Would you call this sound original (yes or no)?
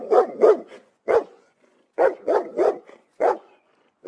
no